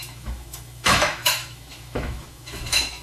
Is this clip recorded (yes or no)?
no